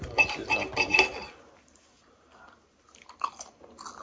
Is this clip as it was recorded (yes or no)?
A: yes